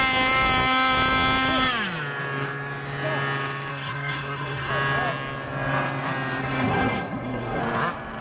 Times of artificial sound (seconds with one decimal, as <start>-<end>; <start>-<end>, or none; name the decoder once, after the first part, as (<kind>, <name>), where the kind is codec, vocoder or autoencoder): 3.7-4.7 (codec, SNAC); 6.4-7.6